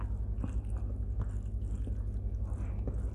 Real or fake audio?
real